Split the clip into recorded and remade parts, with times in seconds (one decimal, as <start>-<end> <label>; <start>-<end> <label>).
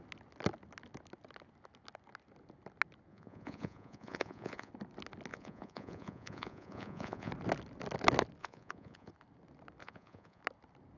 0.0-3.1 recorded; 3.1-4.7 remade; 4.7-5.3 recorded; 5.3-7.3 remade; 7.3-8.4 recorded; 8.4-9.1 remade; 9.1-9.8 recorded; 9.8-10.4 remade; 10.4-11.0 recorded